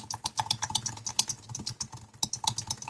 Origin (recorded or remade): recorded